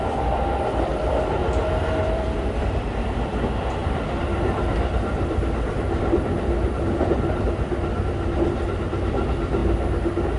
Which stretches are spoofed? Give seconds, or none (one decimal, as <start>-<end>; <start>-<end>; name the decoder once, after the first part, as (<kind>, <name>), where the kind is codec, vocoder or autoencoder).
0.0-1.4 (vocoder, BigVGAN v2); 2.0-9.6